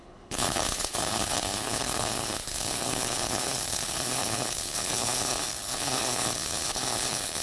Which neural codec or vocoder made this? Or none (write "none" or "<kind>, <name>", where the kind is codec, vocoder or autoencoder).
codec, HILCodec